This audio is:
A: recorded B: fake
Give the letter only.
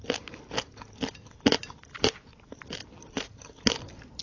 B